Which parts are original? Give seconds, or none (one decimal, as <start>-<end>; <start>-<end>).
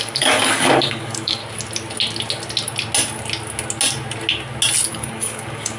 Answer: 1.4-4.9